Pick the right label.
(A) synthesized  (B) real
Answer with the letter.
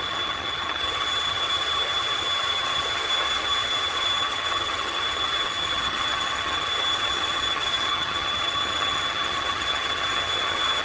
A